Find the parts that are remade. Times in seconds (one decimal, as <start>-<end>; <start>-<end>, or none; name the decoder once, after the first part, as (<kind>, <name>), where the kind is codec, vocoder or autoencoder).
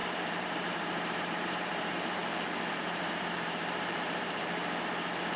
0.0-2.2 (vocoder, BigVGAN v2); 2.7-4.6